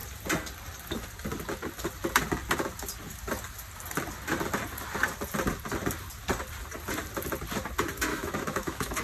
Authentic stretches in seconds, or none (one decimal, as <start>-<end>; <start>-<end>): 0.0-8.1